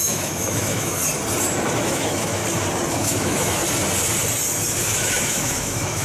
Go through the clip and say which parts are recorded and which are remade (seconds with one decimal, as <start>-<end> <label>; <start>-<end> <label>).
0.0-1.0 remade; 1.0-1.8 recorded; 1.8-2.4 remade; 2.4-2.9 recorded; 2.9-3.6 remade; 3.6-4.8 recorded; 4.8-6.0 remade